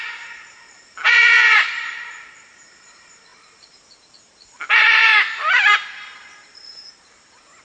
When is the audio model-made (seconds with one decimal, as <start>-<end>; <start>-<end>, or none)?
0.0-7.6